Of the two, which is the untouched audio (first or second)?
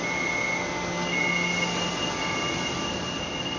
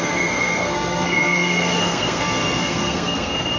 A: first